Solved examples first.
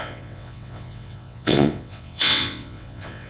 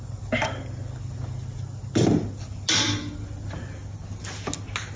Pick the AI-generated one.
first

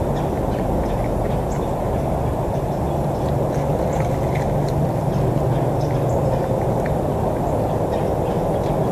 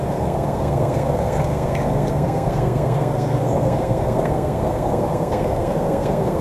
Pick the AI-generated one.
second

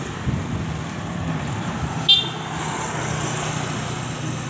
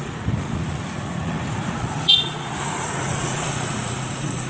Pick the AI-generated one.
second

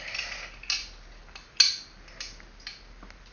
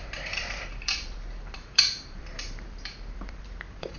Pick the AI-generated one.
second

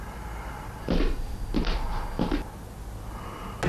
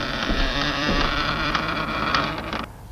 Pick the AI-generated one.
second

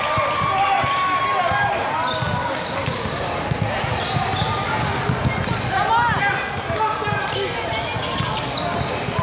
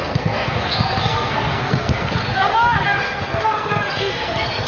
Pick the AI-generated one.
second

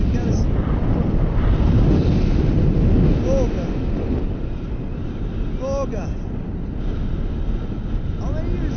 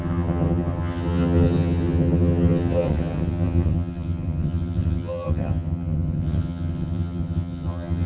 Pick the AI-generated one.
second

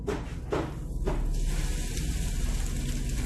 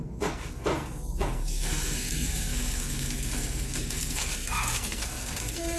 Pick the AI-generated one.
second